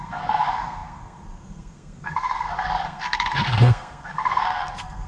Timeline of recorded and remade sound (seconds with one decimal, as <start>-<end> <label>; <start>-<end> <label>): 0.0-5.1 remade

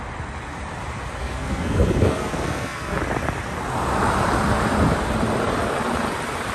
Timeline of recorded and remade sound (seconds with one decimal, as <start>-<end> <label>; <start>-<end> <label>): 0.0-1.2 recorded; 1.2-3.0 remade; 3.0-6.5 recorded

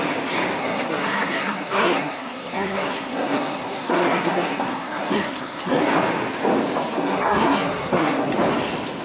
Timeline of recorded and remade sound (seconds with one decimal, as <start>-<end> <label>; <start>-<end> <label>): 0.0-0.6 recorded; 0.6-5.8 remade; 5.8-6.9 recorded; 6.9-8.3 remade; 8.3-9.0 recorded

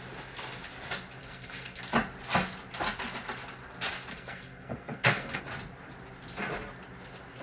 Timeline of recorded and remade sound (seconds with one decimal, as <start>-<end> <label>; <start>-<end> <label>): 0.0-1.2 recorded; 1.2-1.8 remade; 1.8-4.1 recorded; 4.1-5.4 remade; 5.4-7.4 recorded

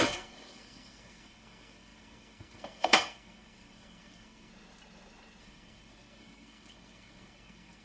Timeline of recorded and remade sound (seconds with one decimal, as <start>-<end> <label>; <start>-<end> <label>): 0.0-4.5 remade; 4.5-5.4 recorded; 5.4-7.8 remade

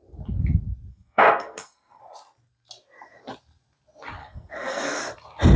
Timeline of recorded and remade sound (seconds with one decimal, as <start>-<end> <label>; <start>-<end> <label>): 0.0-0.9 recorded; 0.9-2.0 remade; 2.0-4.2 recorded; 4.2-5.0 remade; 5.0-5.6 recorded